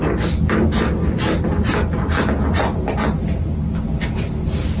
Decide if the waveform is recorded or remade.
recorded